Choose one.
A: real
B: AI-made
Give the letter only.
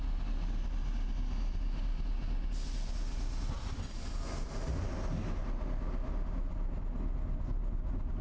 A